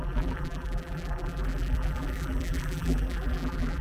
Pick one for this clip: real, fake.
fake